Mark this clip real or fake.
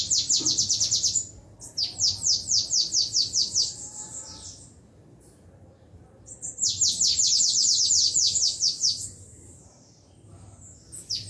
real